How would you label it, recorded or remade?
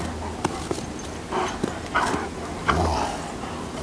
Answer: recorded